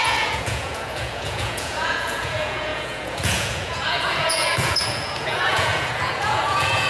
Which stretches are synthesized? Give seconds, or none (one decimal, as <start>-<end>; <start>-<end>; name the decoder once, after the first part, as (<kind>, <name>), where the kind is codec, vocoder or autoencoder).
0.0-6.9 (vocoder, Vocos)